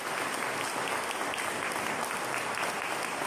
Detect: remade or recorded recorded